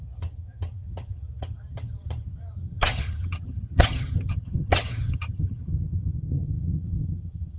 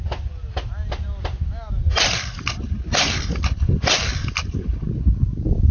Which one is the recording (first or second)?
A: second